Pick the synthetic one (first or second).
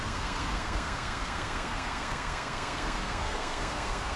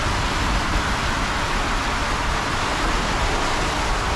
first